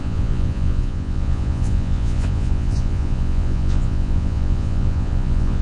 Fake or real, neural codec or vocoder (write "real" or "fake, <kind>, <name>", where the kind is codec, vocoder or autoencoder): fake, vocoder, Vocos